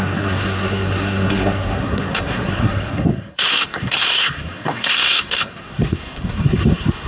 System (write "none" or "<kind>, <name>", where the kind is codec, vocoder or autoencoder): codec, SNAC